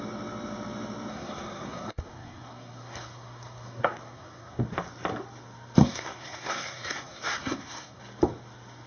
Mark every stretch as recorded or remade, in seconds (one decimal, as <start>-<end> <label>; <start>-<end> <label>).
0.0-1.1 recorded; 1.1-4.6 remade; 4.6-5.8 recorded; 5.8-8.0 remade; 8.0-8.9 recorded